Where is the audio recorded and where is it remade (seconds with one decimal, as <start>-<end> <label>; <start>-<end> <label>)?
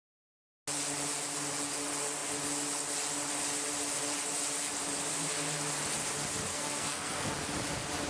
0.0-6.5 recorded; 6.5-7.3 remade; 7.3-8.1 recorded